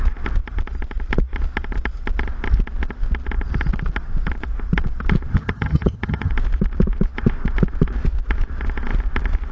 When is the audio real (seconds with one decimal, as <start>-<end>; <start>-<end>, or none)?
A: 0.0-5.3; 6.3-9.5